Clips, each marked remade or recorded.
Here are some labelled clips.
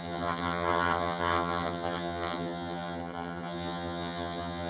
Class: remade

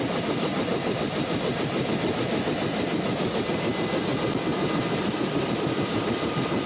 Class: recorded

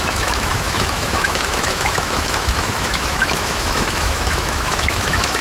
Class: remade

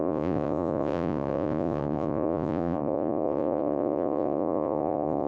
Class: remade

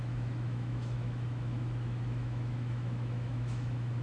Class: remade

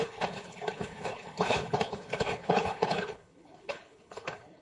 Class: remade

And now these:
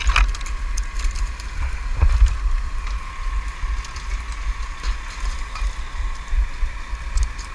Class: recorded